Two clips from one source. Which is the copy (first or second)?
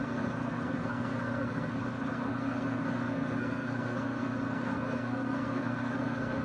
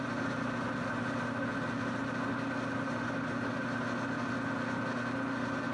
first